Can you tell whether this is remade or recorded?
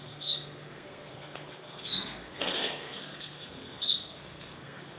remade